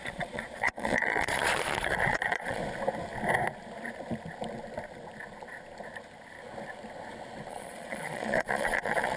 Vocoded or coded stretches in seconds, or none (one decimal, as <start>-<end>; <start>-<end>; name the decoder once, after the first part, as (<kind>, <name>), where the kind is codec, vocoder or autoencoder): 0.0-2.6 (vocoder, Vocos); 7.5-9.2